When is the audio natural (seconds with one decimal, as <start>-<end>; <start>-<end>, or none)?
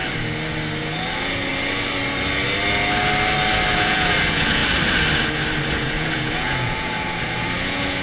0.0-0.8; 1.5-3.7; 4.6-5.7